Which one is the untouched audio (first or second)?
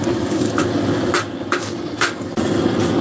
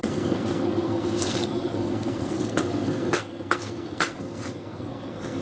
first